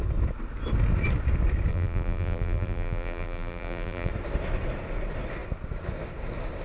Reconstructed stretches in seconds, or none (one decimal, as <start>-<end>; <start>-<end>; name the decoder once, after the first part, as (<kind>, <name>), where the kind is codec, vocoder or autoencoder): 1.7-4.1 (vocoder, BigVGAN v2)